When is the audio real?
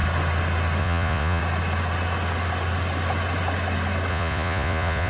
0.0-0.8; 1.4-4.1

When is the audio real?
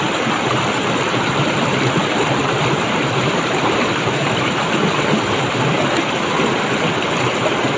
0.0-2.4; 5.9-7.8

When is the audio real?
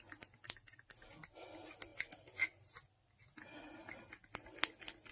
0.0-5.1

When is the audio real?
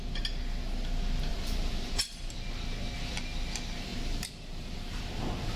0.0-1.3; 2.3-3.9; 5.0-5.6